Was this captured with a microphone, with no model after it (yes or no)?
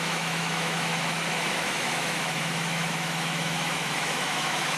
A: no